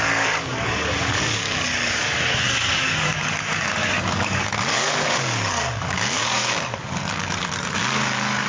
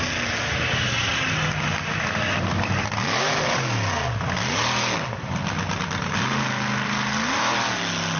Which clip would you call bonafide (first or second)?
second